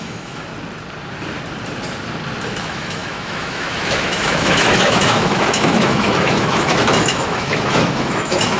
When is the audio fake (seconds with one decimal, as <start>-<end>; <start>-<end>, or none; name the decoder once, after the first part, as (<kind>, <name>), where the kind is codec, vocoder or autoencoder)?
0.0-0.5 (autoencoder, DAC-VAE); 2.6-8.6